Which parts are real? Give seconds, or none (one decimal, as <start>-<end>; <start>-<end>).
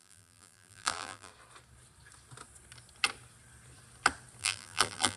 1.3-4.4